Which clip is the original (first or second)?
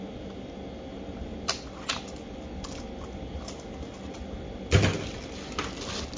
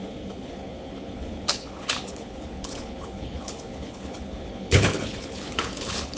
first